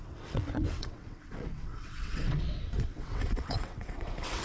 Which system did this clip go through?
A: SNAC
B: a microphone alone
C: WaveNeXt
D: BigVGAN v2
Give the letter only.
C